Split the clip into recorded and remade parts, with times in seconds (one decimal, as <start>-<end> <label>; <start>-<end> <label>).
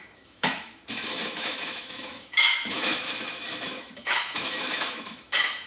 0.0-5.7 remade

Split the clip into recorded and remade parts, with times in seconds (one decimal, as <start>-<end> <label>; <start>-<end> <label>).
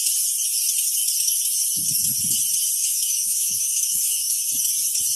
0.0-2.8 recorded; 2.8-4.5 remade; 4.5-5.2 recorded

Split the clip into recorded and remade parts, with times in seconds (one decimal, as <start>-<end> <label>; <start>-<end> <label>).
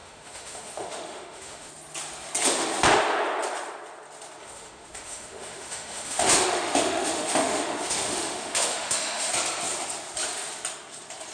0.0-1.7 remade; 1.7-4.4 recorded; 4.4-9.3 remade; 9.3-11.3 recorded